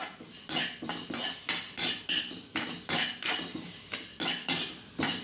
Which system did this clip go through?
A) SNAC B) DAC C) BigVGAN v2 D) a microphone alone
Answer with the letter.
D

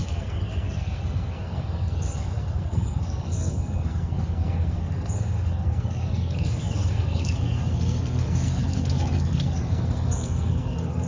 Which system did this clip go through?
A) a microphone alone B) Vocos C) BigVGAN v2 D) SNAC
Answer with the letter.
D